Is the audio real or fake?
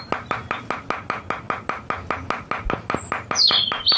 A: real